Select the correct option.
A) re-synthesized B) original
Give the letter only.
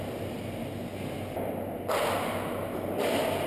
B